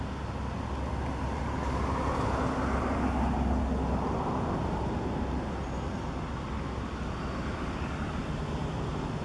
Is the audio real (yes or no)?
yes